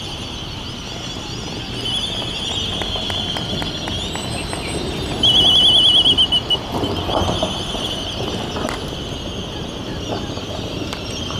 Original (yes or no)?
yes